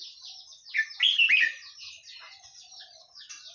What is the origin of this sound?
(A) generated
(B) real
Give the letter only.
B